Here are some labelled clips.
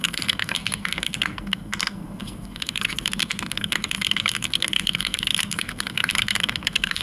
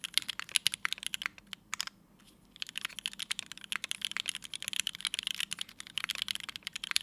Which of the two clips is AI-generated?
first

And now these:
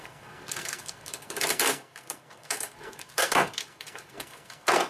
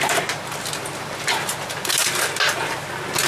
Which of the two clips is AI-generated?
first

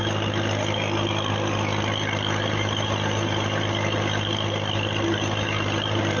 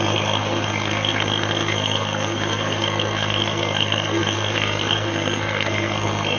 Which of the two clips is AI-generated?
second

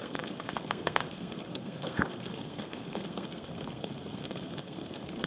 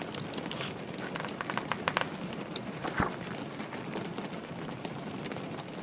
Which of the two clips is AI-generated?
first